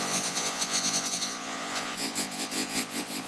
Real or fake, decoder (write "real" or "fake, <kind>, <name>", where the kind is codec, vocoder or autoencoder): fake, vocoder, Vocos